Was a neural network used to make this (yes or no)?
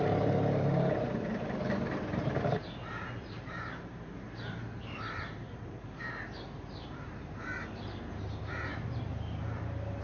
yes